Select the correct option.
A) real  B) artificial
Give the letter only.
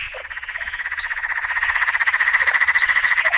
B